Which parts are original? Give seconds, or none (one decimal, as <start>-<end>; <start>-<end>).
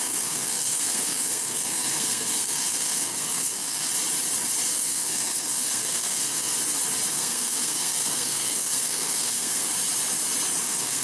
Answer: 3.9-4.7; 6.5-7.1; 9.7-10.6